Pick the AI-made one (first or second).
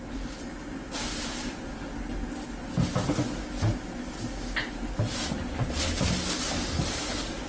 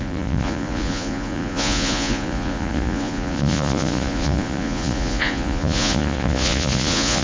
second